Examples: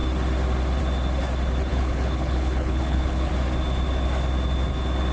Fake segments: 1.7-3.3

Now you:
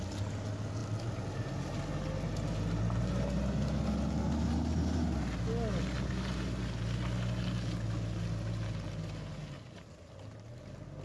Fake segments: none